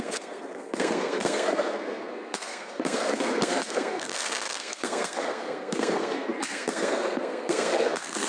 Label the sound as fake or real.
fake